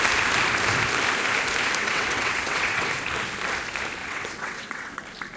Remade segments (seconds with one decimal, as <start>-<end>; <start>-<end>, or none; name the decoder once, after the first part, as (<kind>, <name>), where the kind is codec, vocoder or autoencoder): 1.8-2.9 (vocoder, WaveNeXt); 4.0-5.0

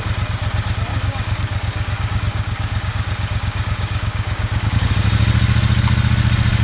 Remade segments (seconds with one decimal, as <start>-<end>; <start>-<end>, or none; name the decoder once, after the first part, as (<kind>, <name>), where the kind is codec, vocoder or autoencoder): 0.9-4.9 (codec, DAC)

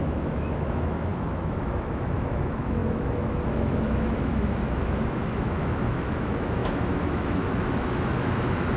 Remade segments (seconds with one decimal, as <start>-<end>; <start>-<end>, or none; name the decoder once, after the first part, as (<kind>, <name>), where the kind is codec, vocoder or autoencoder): 0.0-8.8 (autoencoder, DAC-VAE)

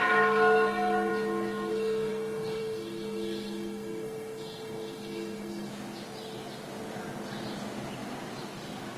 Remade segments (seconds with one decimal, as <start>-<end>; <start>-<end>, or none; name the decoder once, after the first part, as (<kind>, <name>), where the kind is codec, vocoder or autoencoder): 0.0-1.1 (codec, SNAC); 1.7-5.7

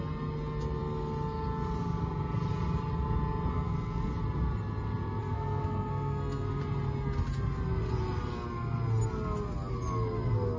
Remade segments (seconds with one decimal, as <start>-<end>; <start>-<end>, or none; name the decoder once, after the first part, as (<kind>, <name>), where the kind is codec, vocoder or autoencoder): 3.5-4.1 (codec, SNAC); 5.2-6.6

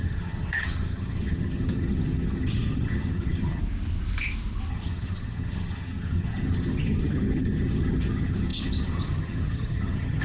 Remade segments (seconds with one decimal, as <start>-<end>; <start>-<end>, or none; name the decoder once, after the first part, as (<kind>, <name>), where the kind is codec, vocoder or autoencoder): 0.0-3.6 (vocoder, HiFi-GAN); 4.7-10.2

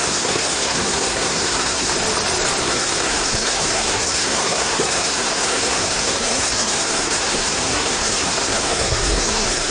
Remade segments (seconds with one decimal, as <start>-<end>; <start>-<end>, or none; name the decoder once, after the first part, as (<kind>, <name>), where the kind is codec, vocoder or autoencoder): 0.0-1.9 (codec, SNAC); 2.6-9.7